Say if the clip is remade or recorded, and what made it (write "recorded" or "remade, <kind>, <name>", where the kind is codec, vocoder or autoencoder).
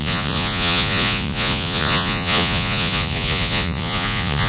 remade, vocoder, Vocos